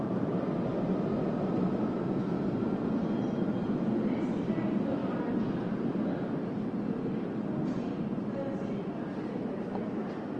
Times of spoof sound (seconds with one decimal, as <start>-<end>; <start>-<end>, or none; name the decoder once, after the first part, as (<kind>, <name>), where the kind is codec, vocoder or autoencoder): none